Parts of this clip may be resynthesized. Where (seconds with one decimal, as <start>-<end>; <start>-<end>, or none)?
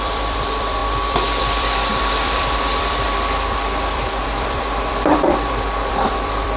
0.0-6.6